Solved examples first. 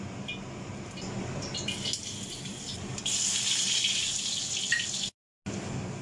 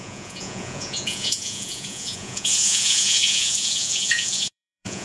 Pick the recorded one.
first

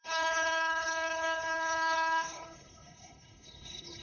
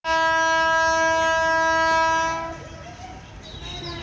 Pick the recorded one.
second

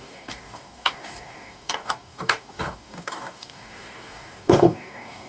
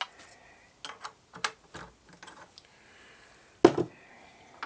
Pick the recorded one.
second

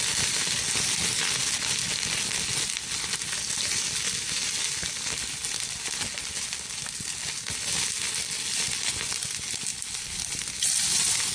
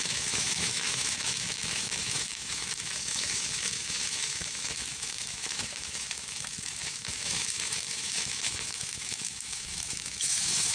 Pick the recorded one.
first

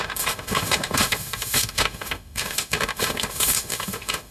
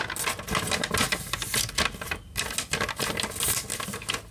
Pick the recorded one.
second